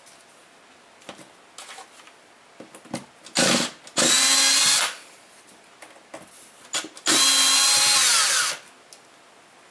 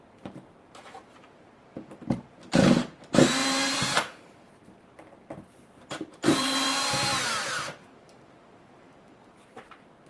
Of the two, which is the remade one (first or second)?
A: second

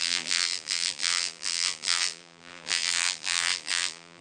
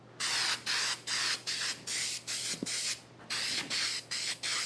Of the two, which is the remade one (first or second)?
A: first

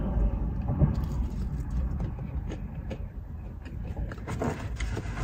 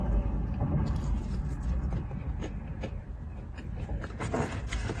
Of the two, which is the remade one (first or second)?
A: first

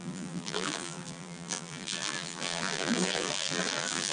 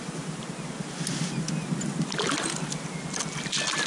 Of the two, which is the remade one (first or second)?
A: first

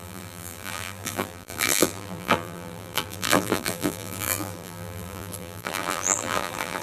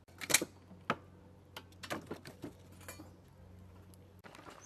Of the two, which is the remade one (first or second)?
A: first